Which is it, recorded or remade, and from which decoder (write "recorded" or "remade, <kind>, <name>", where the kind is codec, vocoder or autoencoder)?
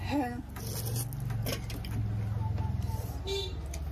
recorded